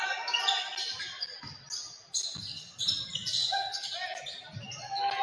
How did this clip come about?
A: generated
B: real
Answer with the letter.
B